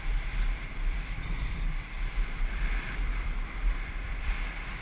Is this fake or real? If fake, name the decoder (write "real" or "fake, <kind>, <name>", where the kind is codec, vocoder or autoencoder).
fake, vocoder, BigVGAN v2